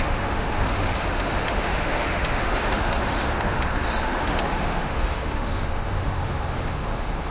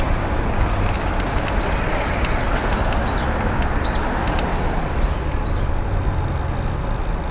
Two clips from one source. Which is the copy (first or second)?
first